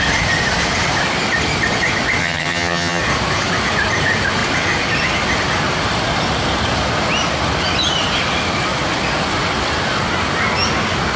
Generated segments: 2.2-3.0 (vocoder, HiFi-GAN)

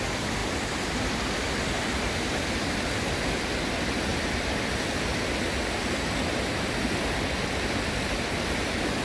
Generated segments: none

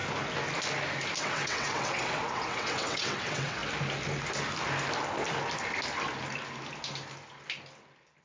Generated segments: 1.2-3.6 (vocoder, WaveNeXt)

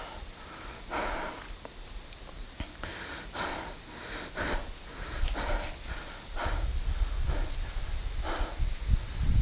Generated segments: none

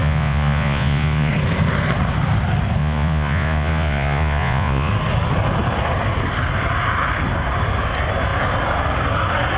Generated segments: 0.0-1.3 (vocoder, Vocos); 2.8-4.9

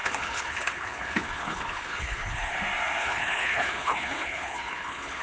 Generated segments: 0.0-2.6 (codec, HILCodec); 3.0-5.2